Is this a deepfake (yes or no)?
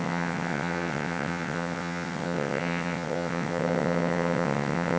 yes